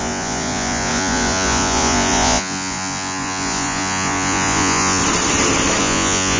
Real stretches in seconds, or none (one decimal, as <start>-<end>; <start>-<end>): 5.0-5.8